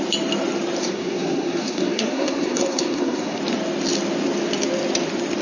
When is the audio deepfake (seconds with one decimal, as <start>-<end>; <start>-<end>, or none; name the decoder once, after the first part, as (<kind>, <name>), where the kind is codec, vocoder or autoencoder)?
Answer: 0.8-3.4 (codec, SNAC)